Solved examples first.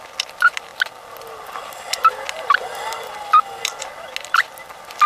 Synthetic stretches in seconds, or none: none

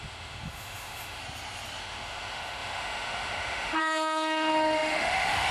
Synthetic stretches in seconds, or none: 0.0-1.2 (autoencoder, DAC-VAE); 1.8-5.5

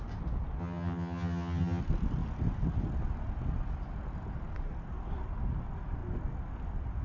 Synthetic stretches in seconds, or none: 0.6-1.8 (vocoder, HiFi-GAN)

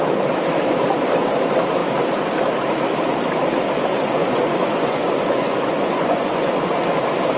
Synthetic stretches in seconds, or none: 3.9-6.6 (vocoder, Vocos)

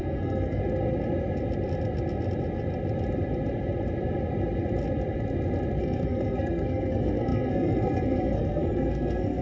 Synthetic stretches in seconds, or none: 0.0-0.6 (codec, SNAC); 5.8-9.4